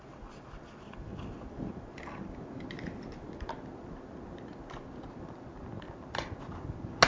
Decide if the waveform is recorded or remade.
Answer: recorded